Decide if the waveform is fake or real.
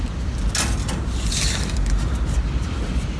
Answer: real